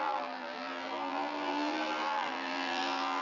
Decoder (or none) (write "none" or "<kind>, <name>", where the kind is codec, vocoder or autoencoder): vocoder, BigVGAN v2